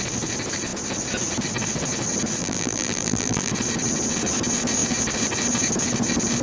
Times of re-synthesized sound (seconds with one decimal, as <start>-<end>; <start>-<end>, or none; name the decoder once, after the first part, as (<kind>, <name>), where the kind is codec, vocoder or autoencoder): 2.4-3.5 (vocoder, BigVGAN v2)